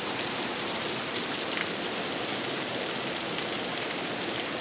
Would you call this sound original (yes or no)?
no